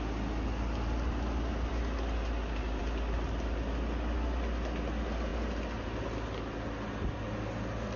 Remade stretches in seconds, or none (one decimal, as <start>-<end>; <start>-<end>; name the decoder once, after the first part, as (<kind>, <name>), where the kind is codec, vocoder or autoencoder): none